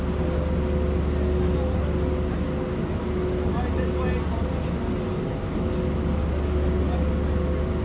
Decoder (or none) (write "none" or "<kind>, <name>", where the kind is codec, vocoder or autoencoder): none